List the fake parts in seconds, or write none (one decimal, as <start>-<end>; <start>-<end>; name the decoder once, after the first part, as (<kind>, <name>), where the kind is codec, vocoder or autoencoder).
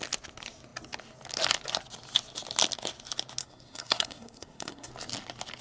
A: 3.4-4.9 (codec, SNAC)